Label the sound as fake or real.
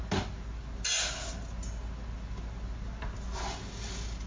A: real